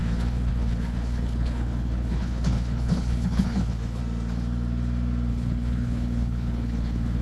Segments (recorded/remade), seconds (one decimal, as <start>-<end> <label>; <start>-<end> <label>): 0.0-4.0 remade; 4.0-5.3 recorded; 5.3-7.2 remade